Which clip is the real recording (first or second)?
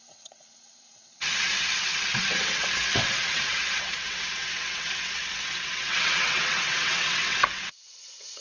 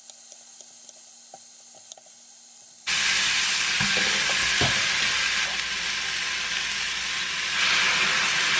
second